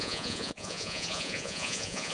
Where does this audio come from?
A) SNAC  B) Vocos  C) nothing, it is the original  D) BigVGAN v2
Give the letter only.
B